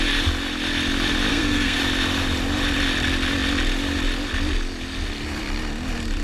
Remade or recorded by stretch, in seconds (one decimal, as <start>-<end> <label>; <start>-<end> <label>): 0.0-1.3 recorded; 1.3-1.8 remade; 1.8-6.2 recorded